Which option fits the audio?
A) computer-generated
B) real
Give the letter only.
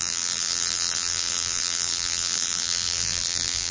A